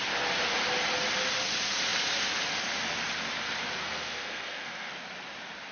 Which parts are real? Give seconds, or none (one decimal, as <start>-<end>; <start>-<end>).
0.0-3.8; 4.9-5.7